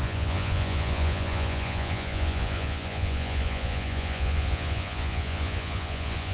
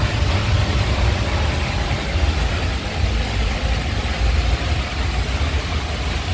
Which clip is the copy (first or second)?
first